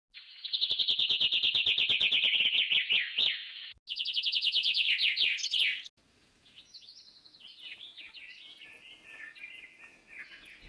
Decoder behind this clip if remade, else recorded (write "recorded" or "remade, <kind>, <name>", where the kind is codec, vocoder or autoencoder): recorded